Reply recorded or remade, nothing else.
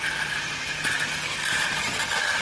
recorded